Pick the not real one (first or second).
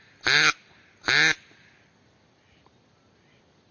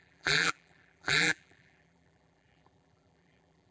second